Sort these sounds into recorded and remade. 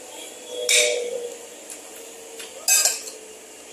recorded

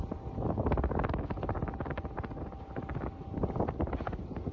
recorded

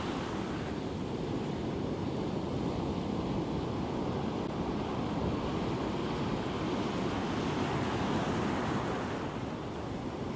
recorded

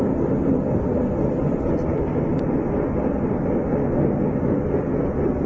recorded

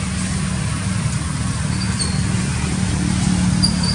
recorded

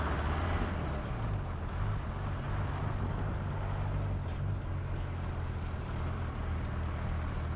recorded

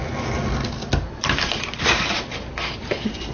recorded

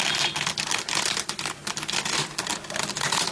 recorded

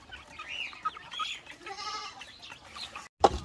recorded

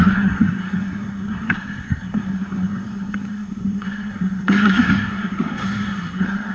remade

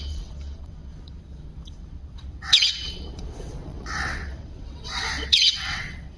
remade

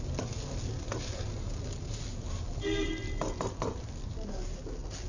recorded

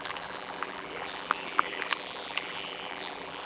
remade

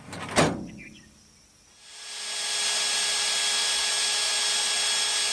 recorded